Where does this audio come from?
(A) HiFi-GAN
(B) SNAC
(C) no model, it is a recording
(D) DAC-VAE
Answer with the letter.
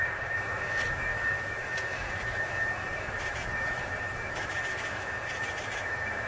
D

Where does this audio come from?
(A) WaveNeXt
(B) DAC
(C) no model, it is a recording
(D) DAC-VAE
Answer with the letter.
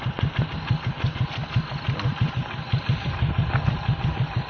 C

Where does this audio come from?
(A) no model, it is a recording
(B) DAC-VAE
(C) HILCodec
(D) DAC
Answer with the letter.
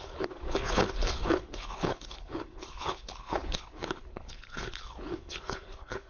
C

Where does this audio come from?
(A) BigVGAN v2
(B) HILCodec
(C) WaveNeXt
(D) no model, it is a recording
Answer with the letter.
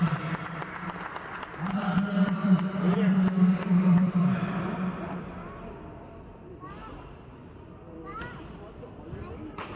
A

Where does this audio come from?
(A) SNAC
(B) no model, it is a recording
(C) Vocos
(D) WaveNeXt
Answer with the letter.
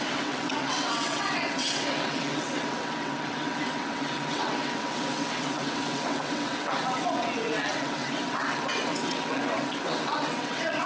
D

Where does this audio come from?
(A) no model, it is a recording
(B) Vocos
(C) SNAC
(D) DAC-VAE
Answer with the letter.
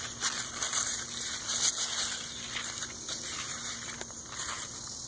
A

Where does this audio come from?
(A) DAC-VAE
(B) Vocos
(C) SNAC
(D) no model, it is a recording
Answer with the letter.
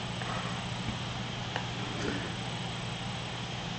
D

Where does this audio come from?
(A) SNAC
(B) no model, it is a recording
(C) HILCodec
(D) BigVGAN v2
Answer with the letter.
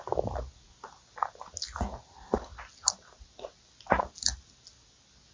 B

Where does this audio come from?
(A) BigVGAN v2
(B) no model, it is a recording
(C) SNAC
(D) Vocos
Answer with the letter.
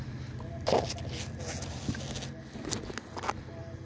B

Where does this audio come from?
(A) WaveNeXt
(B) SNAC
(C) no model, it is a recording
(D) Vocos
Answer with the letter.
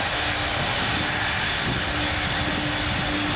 C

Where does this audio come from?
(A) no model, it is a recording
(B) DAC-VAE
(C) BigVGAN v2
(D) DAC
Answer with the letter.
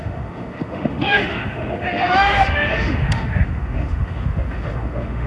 B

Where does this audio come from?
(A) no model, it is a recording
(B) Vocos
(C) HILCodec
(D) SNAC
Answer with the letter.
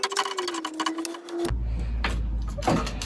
A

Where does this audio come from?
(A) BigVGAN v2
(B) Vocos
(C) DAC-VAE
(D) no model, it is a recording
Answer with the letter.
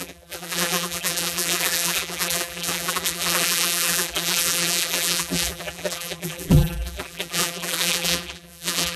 A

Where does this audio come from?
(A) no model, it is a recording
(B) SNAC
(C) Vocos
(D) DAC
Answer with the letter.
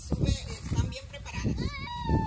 A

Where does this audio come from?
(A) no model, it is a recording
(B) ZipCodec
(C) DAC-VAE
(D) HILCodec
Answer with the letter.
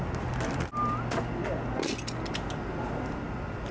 A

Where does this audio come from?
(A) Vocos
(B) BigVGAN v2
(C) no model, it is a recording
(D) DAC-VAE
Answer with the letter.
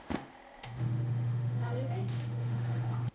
D